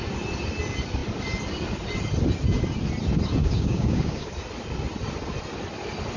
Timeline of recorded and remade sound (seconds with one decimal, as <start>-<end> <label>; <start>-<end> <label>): 0.0-3.4 recorded; 3.4-4.3 remade; 4.3-6.2 recorded